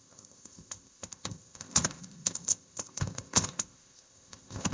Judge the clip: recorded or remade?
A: remade